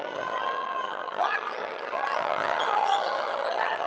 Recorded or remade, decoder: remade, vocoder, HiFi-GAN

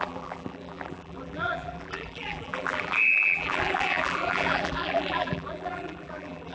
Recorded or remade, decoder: remade, vocoder, BigVGAN v2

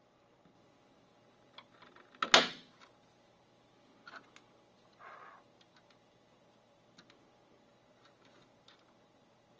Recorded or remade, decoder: recorded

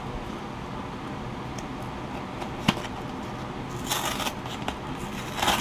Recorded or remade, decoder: recorded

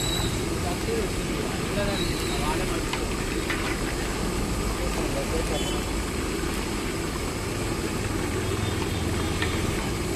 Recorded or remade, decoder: recorded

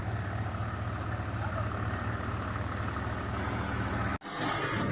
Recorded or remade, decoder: recorded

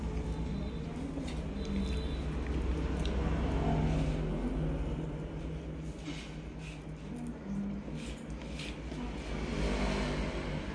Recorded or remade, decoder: recorded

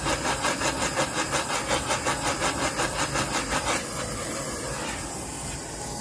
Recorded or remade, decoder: recorded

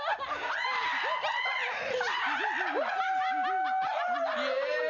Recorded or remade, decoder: recorded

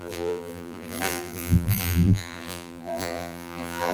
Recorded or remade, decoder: remade, vocoder, BigVGAN v2